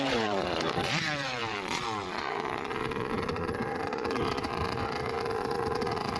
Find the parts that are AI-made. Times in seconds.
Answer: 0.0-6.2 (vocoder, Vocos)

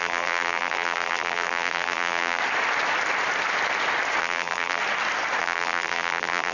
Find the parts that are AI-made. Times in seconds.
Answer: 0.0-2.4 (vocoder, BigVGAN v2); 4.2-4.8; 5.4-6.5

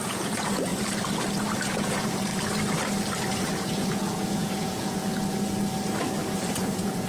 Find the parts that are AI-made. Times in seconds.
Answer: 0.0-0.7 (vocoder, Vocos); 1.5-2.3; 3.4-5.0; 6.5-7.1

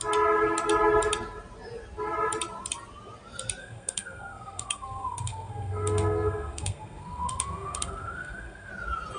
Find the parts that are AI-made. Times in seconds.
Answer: 3.6-8.7 (codec, SNAC)

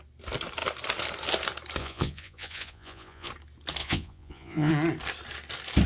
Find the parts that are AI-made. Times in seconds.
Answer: 1.8-3.3 (vocoder, Vocos); 3.8-4.7

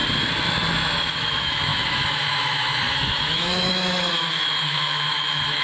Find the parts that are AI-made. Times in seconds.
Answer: 0.7-5.6 (autoencoder, DAC-VAE)